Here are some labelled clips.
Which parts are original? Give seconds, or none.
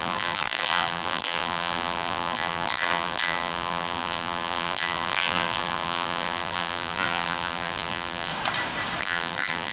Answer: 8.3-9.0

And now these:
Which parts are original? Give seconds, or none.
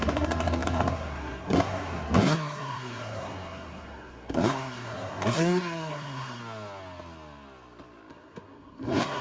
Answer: 6.4-8.1